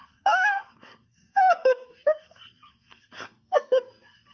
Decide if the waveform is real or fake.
fake